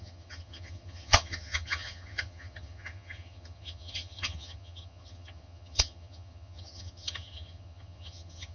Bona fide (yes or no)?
no